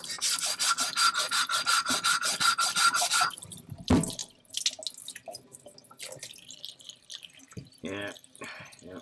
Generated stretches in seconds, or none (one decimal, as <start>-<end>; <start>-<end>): 0.0-4.2; 6.0-9.0